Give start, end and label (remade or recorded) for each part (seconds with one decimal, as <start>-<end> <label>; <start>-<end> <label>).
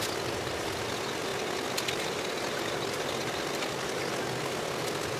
0.0-5.2 recorded